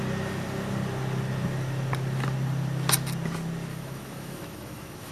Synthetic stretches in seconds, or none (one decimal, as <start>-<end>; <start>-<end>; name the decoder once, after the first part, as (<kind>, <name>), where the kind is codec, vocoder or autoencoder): 3.7-5.1 (autoencoder, DAC-VAE)